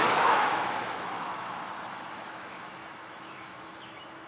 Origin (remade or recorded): remade